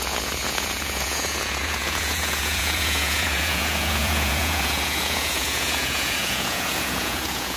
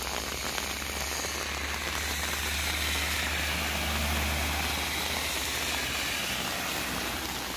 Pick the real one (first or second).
second